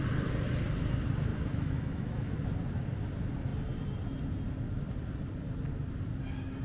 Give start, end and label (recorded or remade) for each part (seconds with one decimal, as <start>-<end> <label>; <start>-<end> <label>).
0.0-1.3 recorded; 1.3-2.3 remade; 2.3-6.6 recorded